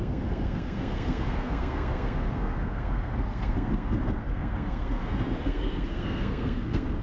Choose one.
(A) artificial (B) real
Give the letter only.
A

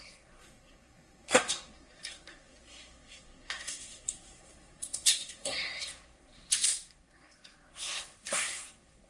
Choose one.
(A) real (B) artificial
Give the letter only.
B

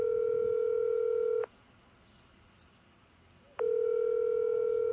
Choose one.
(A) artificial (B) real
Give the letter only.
B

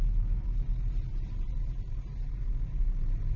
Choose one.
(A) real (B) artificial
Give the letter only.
A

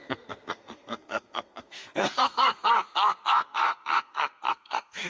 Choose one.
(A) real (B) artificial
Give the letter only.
B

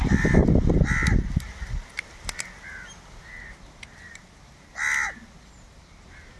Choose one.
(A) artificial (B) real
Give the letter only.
B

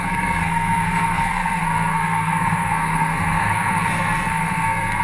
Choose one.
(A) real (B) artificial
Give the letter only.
B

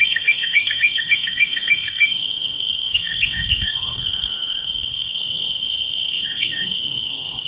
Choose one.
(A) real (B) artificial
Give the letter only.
B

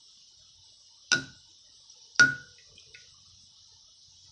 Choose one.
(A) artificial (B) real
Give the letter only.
B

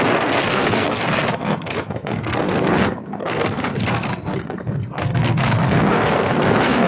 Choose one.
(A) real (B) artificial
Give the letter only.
B